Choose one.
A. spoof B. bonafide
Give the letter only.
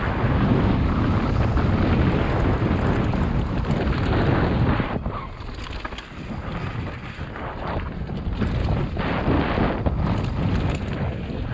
B